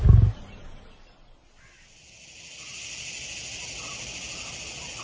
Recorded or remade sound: recorded